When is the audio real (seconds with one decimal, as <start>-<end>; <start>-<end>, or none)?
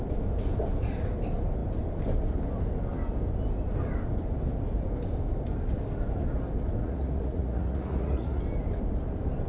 0.0-6.8; 8.4-9.5